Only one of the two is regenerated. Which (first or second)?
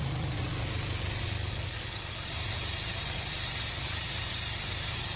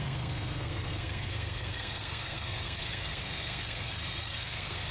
second